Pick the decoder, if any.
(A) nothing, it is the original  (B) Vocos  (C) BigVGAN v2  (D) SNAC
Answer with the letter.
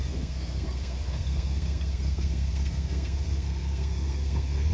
D